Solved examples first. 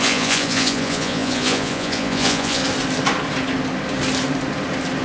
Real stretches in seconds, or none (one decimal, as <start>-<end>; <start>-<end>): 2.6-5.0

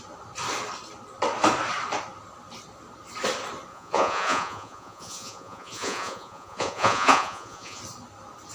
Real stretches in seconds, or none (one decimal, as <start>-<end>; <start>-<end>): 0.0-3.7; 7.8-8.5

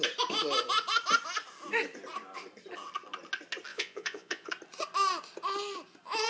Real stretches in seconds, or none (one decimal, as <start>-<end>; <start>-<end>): 0.0-3.7; 4.5-6.3